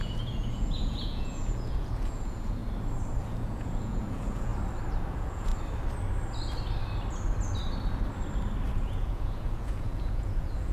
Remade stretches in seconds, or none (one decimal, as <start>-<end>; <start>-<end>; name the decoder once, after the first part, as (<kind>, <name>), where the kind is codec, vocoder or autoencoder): 0.0-2.6 (vocoder, Vocos); 3.2-4.5; 5.1-5.5; 8.8-10.7